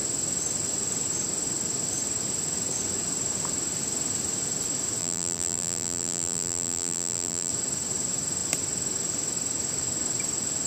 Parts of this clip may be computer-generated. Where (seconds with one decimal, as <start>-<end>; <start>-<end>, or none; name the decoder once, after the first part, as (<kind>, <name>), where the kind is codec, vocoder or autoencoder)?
5.0-7.5 (vocoder, BigVGAN v2)

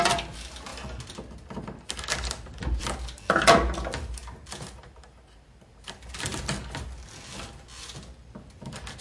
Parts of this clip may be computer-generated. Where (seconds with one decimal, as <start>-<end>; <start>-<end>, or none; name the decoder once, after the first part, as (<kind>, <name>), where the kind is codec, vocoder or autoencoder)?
none

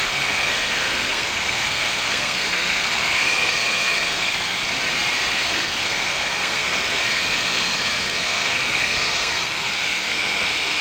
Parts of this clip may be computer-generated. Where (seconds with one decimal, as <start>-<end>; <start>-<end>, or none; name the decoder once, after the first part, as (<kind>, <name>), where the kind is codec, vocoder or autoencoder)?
0.0-4.6 (codec, SNAC); 5.3-10.8

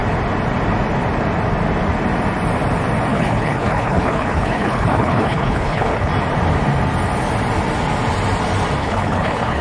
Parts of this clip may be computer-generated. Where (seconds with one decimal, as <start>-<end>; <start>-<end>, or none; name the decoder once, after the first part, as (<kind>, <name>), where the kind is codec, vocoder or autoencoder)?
3.1-6.1 (codec, HILCodec); 8.8-9.6

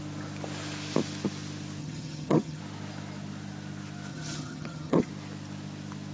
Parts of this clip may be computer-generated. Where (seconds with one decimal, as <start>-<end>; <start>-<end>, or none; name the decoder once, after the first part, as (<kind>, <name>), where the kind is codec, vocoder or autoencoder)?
1.8-2.6 (vocoder, HiFi-GAN); 4.1-5.1